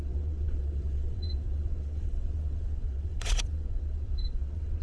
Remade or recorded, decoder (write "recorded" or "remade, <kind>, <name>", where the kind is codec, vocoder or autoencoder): remade, vocoder, WaveNeXt